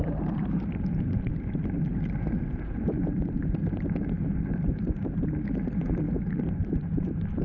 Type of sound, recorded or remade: remade